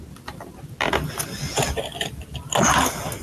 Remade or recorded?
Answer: recorded